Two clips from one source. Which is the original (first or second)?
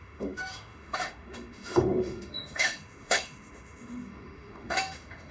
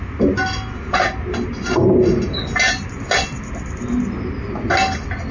second